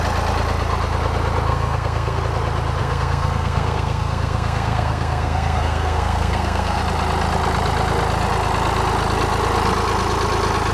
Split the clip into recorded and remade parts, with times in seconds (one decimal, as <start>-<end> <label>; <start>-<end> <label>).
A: 0.0-1.5 recorded; 1.5-2.2 remade; 2.2-2.8 recorded; 2.8-6.8 remade; 6.8-10.7 recorded